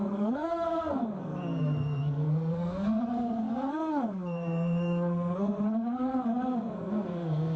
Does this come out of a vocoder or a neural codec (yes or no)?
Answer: yes